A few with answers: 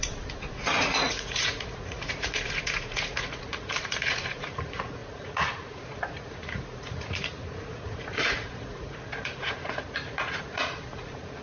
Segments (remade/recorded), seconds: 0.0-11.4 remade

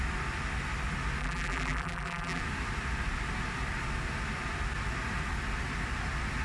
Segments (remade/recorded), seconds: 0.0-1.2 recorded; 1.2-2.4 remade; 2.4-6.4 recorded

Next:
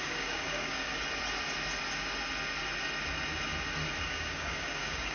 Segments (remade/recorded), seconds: 0.0-0.9 remade; 0.9-4.0 recorded; 4.0-5.1 remade

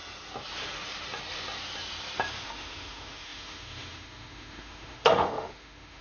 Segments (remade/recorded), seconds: 0.0-2.4 recorded; 2.4-6.0 remade

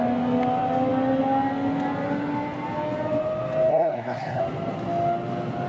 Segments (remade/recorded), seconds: 0.0-3.7 recorded; 3.7-4.4 remade; 4.4-5.7 recorded